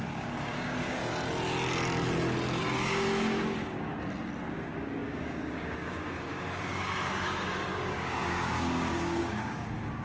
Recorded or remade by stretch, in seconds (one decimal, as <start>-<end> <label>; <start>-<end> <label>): 0.0-1.0 remade; 1.0-2.6 recorded; 2.6-3.9 remade; 3.9-4.5 recorded; 4.5-10.0 remade